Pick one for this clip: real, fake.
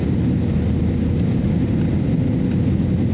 real